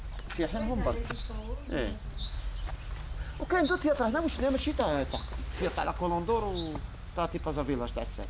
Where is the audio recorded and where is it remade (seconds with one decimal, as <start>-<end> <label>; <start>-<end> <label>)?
0.0-8.3 recorded